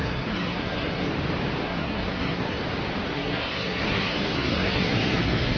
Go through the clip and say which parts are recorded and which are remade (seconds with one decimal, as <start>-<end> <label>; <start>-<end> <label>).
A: 0.0-1.1 remade; 1.1-1.6 recorded; 1.6-2.6 remade; 2.6-3.1 recorded; 3.1-5.6 remade